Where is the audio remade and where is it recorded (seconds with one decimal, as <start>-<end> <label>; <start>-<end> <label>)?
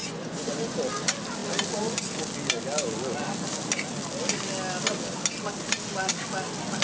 0.0-0.5 remade; 0.5-6.8 recorded